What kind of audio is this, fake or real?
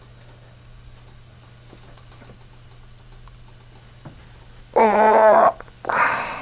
real